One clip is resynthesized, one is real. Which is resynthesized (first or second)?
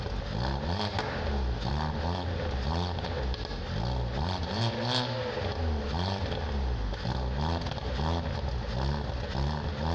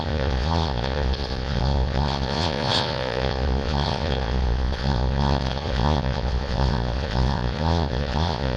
second